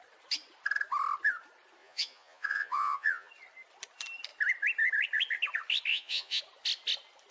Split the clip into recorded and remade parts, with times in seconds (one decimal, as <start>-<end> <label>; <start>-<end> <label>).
0.0-1.8 recorded; 1.8-3.3 remade; 3.3-5.9 recorded; 5.9-6.4 remade; 6.4-7.3 recorded